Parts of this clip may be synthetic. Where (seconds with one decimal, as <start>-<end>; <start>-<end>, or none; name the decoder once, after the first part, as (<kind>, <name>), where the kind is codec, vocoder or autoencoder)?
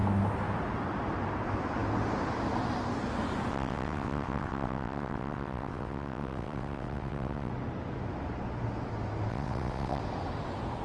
3.5-7.5 (vocoder, WaveNeXt); 9.3-10.0